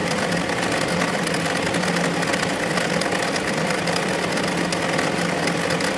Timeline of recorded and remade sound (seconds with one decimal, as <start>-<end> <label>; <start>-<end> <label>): 0.0-6.0 recorded

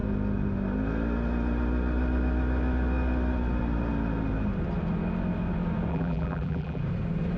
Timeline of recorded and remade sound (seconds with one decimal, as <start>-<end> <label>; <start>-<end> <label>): 0.0-5.9 recorded; 5.9-6.8 remade; 6.8-7.4 recorded